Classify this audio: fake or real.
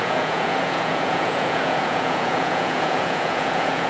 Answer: fake